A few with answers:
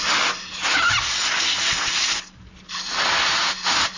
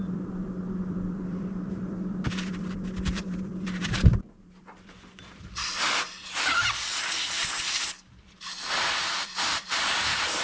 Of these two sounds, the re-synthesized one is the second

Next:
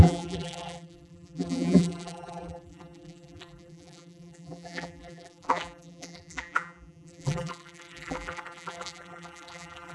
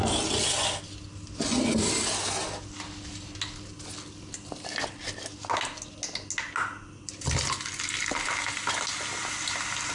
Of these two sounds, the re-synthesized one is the first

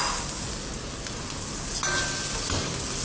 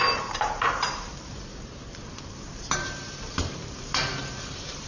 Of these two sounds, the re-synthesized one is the second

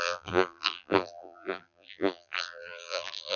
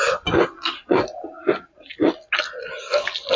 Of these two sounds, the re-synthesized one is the first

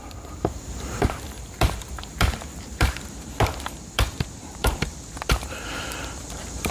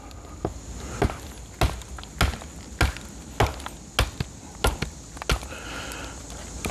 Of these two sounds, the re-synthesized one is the first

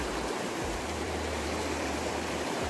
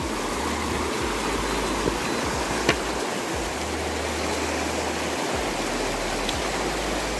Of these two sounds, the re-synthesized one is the first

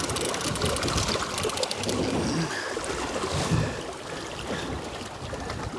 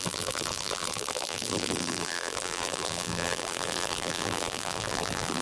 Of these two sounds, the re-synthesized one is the second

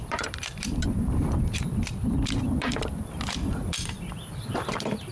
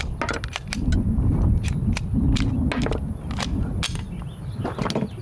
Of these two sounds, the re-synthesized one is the first